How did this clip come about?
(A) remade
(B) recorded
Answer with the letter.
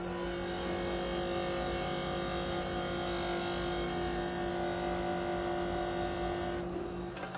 B